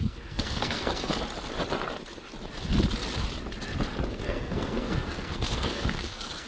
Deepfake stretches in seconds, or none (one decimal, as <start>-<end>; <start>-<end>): 0.0-1.1; 4.1-6.5